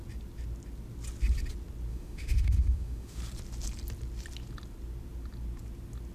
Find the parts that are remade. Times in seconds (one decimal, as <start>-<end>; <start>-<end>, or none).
1.9-3.2